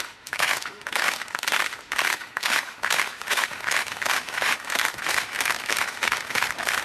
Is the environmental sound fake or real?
fake